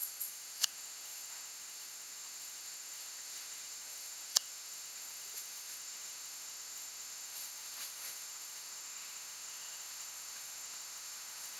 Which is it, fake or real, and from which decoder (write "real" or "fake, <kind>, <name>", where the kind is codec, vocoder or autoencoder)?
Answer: fake, autoencoder, DAC-VAE